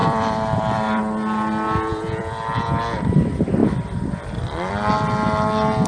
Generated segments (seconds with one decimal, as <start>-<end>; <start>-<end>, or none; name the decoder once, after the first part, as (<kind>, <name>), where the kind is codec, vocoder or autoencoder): 0.0-1.0 (vocoder, BigVGAN v2); 1.9-2.8; 3.6-4.7